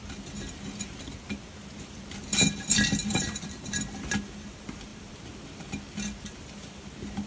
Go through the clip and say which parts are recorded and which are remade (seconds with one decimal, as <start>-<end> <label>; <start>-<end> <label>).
0.0-3.0 recorded; 3.0-3.7 remade; 3.7-7.3 recorded